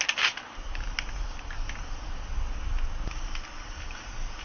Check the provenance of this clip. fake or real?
real